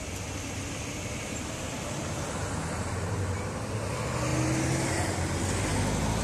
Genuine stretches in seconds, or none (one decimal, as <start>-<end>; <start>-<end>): 0.0-6.2